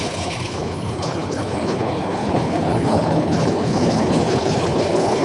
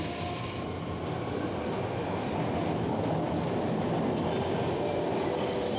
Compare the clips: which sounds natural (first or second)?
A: second